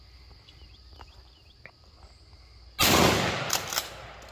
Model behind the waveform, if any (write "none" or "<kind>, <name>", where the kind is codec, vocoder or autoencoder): none